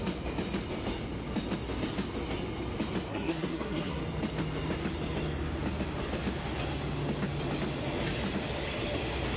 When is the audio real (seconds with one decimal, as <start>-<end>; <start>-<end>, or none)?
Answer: 0.0-3.1; 4.0-9.4